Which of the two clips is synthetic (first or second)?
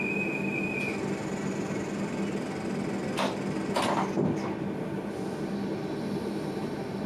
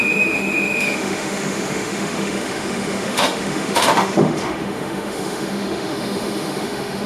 second